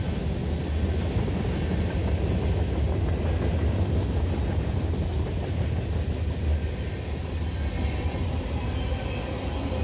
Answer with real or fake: real